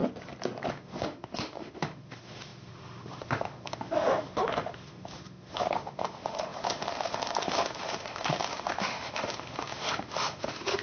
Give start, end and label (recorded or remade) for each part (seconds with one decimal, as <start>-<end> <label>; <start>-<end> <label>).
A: 0.0-0.7 recorded; 0.7-10.8 remade